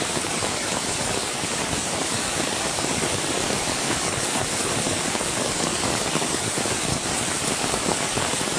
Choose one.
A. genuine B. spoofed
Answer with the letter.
B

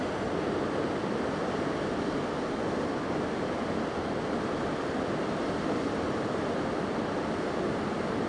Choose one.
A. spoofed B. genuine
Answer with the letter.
B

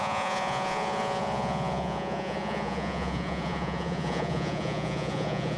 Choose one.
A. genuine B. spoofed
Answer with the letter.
B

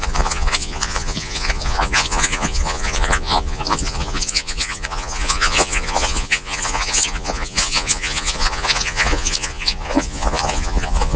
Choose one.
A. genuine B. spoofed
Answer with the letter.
B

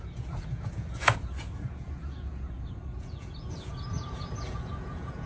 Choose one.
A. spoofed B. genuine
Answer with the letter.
A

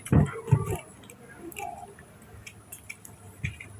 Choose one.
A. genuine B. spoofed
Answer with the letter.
A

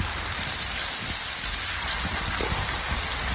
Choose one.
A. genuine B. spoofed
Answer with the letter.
A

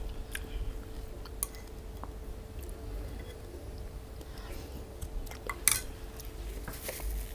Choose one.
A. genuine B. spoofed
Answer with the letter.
A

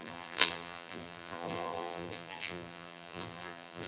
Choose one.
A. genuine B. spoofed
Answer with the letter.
B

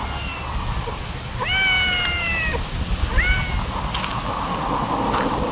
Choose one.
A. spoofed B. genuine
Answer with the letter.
B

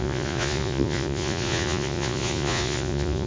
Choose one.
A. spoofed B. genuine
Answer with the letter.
A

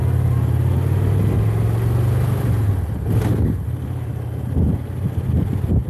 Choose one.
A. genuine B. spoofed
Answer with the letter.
A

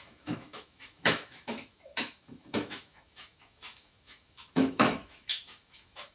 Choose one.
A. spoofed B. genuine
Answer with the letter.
A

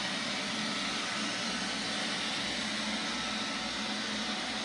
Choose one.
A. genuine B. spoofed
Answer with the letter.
A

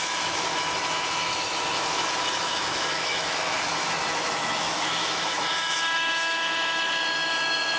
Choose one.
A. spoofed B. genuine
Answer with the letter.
A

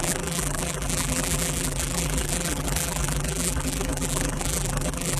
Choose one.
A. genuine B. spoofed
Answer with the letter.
B